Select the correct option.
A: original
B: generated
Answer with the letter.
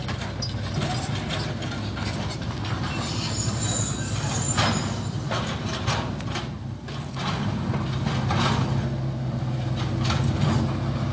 A